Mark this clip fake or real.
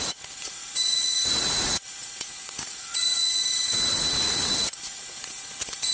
fake